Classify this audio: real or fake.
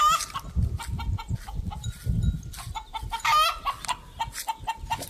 real